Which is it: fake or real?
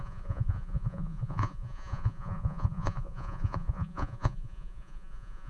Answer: fake